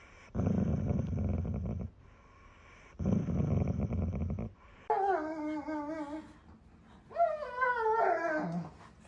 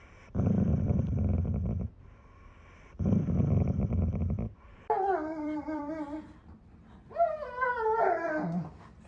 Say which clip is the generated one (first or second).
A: second